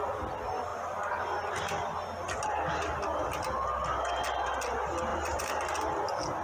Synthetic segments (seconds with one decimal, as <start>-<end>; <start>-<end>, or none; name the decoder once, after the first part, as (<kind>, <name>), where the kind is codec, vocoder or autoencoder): 5.1-5.6 (vocoder, BigVGAN v2)